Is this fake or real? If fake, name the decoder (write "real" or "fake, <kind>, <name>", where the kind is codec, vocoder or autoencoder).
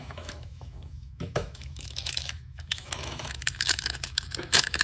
fake, autoencoder, DAC-VAE